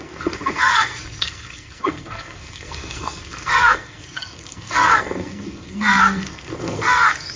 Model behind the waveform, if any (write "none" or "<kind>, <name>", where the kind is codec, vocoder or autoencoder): codec, SNAC